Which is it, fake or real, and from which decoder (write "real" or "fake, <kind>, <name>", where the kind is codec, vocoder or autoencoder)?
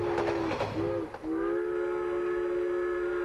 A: real